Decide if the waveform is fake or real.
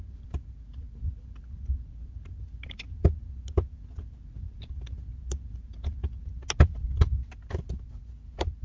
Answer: real